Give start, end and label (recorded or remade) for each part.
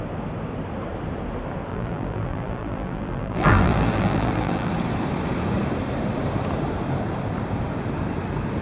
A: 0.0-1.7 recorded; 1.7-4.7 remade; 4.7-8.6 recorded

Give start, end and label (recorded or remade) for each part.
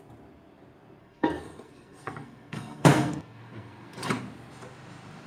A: 0.0-1.0 recorded; 1.0-4.2 remade; 4.2-5.3 recorded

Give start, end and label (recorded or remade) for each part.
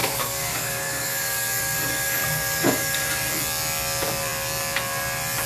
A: 0.0-3.3 remade; 3.3-5.5 recorded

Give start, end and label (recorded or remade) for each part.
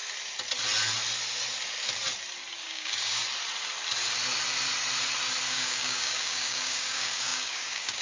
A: 0.0-2.6 recorded; 2.6-3.2 remade; 3.2-5.5 recorded; 5.5-8.0 remade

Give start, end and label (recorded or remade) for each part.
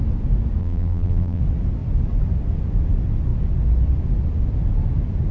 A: 0.0-0.6 recorded; 0.6-1.4 remade; 1.4-5.3 recorded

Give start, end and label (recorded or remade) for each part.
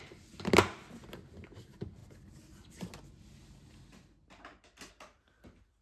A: 0.0-5.8 recorded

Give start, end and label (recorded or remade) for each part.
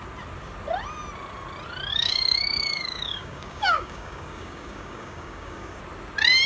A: 0.0-1.9 recorded; 1.9-5.8 remade; 5.8-6.5 recorded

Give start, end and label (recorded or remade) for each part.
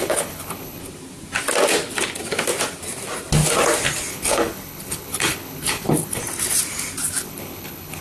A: 0.0-0.8 remade; 0.8-4.1 recorded; 4.1-6.2 remade; 6.2-7.2 recorded; 7.2-8.0 remade